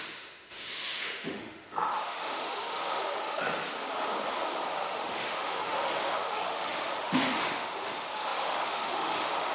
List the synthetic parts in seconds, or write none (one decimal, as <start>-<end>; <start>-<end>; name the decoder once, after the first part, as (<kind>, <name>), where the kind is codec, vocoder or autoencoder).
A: 0.0-3.4 (autoencoder, DAC-VAE); 4.7-9.5